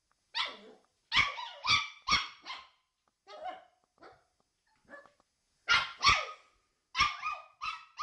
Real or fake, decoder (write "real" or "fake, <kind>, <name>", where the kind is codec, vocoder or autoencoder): real